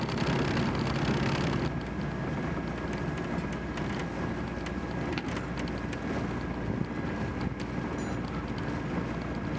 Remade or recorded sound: recorded